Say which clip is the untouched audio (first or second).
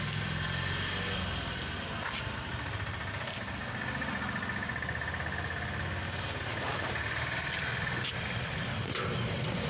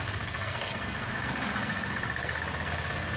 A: first